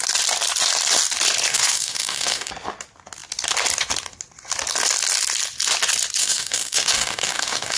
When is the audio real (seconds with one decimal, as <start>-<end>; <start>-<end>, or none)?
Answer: 0.0-1.5; 2.5-6.2